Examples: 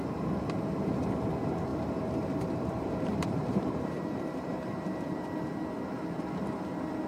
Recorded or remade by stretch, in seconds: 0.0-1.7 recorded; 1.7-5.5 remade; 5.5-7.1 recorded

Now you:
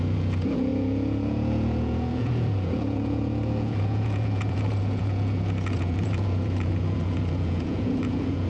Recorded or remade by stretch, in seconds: 0.0-8.5 remade

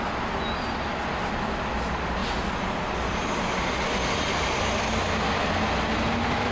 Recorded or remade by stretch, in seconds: 0.0-6.5 recorded

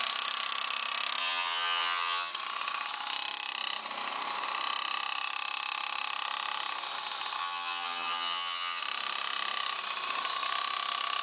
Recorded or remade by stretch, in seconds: 0.0-1.2 recorded; 1.2-2.3 remade; 2.3-7.4 recorded; 7.4-8.8 remade; 8.8-11.2 recorded